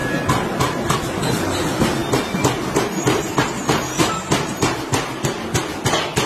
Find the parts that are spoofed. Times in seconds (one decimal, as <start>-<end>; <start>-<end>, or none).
none